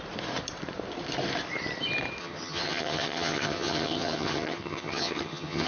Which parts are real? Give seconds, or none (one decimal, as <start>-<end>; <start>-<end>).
0.0-2.2